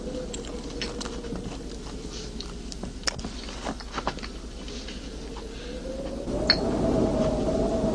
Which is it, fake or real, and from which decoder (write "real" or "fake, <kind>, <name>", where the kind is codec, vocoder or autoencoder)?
real